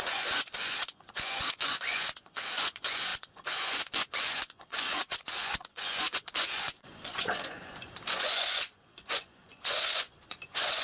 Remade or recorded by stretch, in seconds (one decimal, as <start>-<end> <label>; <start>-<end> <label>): 0.0-10.8 remade

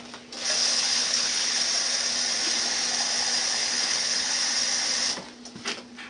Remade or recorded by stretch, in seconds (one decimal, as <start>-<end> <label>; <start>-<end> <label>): 0.0-0.6 recorded; 0.6-1.6 remade; 1.6-3.6 recorded; 3.6-4.3 remade; 4.3-6.1 recorded

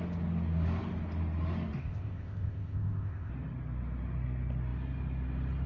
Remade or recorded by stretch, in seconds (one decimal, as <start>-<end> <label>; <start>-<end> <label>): 0.0-1.8 recorded; 1.8-3.3 remade; 3.3-5.7 recorded

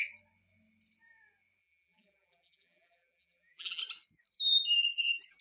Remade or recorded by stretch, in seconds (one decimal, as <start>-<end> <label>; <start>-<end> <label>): 0.0-1.6 recorded; 1.6-3.8 remade; 3.8-5.0 recorded; 5.0-5.4 remade

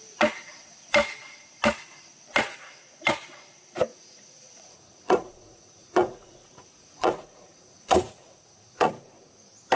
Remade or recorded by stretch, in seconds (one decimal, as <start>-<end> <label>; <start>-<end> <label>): 0.0-3.9 recorded; 3.9-8.9 remade; 8.9-9.8 recorded

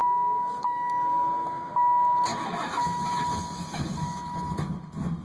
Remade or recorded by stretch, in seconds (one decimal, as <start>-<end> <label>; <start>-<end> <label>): 0.0-1.7 remade; 1.7-2.3 recorded; 2.3-4.7 remade; 4.7-5.2 recorded

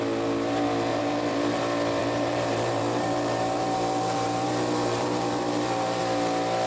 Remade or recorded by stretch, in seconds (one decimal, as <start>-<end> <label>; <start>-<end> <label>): 0.0-0.9 recorded; 0.9-1.6 remade; 1.6-2.0 recorded; 2.0-6.0 remade; 6.0-6.7 recorded